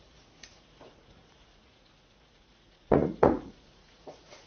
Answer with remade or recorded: remade